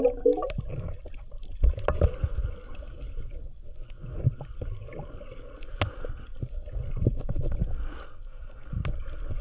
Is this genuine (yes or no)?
yes